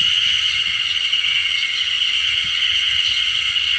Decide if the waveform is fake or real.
fake